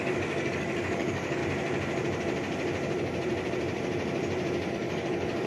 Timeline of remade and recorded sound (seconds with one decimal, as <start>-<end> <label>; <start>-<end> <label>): 0.0-1.4 remade; 1.4-4.7 recorded; 4.7-5.5 remade